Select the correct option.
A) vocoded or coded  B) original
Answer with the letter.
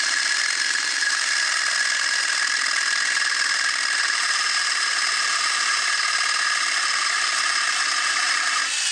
B